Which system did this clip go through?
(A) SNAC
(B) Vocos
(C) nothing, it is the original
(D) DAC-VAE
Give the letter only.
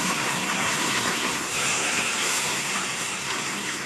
A